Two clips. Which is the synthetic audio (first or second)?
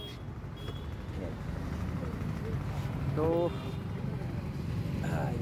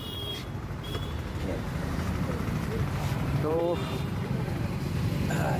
second